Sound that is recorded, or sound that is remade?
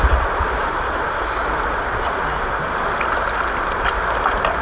recorded